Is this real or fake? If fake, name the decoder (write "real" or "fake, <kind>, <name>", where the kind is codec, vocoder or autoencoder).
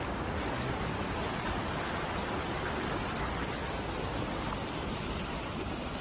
real